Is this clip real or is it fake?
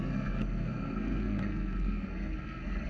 fake